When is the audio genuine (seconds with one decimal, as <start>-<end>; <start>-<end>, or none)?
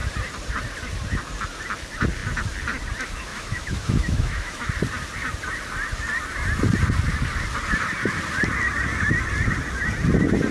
0.0-3.3; 4.7-10.5